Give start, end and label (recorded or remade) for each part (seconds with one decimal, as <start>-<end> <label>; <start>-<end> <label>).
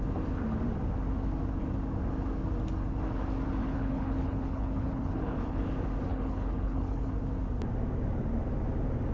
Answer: 0.0-3.6 recorded; 3.6-5.6 remade; 5.6-6.1 recorded; 6.1-7.1 remade; 7.1-9.1 recorded